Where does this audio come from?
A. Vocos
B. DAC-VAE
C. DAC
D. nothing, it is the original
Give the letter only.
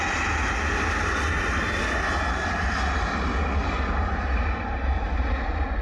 D